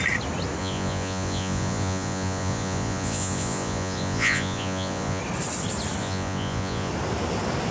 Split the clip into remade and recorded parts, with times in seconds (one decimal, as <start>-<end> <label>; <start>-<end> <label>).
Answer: 0.0-0.6 recorded; 0.6-5.2 remade; 5.2-6.0 recorded; 6.0-6.9 remade; 6.9-7.7 recorded